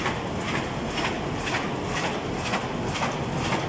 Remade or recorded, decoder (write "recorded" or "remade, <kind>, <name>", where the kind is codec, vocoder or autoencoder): recorded